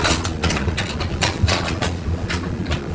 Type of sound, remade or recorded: remade